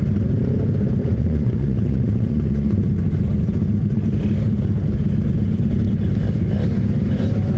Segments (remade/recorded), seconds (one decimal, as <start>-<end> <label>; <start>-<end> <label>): 0.0-1.0 recorded; 1.0-2.8 remade; 2.8-7.6 recorded